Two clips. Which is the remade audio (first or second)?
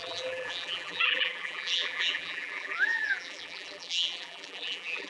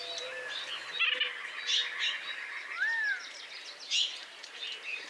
first